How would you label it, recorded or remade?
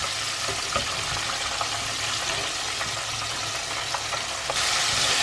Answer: recorded